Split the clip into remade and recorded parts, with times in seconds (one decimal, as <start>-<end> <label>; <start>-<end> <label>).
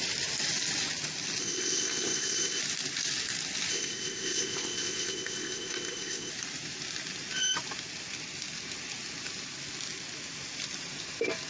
0.0-1.4 recorded; 1.4-2.6 remade; 2.6-3.7 recorded; 3.7-6.3 remade; 6.3-11.5 recorded